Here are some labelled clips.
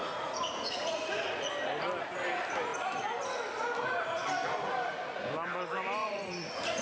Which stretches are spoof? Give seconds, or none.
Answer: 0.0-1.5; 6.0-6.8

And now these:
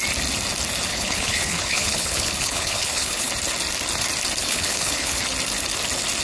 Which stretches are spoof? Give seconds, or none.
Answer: 0.9-3.3; 4.4-5.2

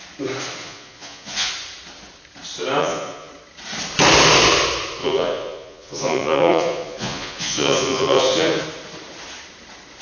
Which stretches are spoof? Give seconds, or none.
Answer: 0.6-1.5; 2.8-3.3; 5.0-8.6